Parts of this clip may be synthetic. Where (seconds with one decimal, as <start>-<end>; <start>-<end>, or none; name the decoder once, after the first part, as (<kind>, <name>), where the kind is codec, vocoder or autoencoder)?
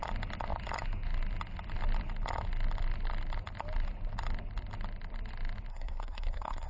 5.7-6.7 (codec, SNAC)